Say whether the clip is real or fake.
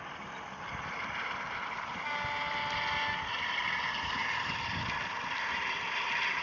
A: real